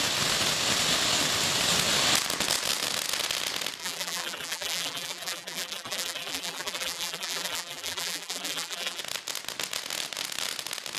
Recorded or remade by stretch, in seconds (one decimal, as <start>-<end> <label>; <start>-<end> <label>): 0.0-3.8 recorded; 3.8-9.0 remade; 9.0-11.0 recorded